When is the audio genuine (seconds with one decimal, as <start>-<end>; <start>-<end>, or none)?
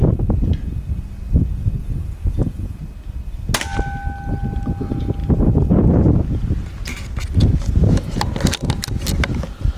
0.0-1.8; 2.8-9.8